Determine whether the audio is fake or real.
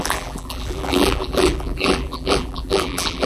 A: fake